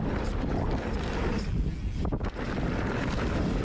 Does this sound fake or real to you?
real